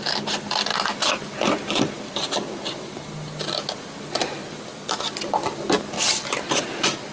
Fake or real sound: real